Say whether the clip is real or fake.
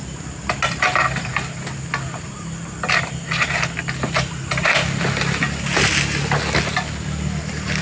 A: real